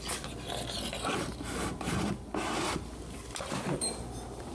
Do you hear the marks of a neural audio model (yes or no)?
no